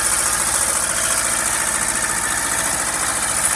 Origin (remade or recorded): recorded